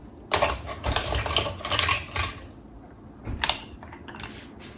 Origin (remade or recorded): recorded